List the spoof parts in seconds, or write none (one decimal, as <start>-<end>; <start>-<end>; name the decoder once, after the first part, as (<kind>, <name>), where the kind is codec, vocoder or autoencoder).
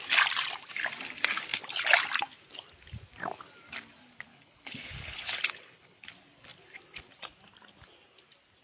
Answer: 4.3-6.1 (codec, HILCodec)